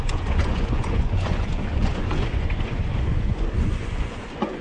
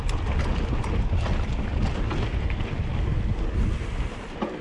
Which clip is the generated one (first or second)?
first